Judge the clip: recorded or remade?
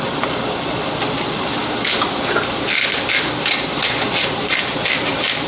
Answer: recorded